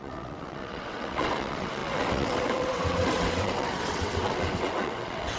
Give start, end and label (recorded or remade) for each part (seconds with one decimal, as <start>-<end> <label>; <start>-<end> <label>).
0.0-5.4 remade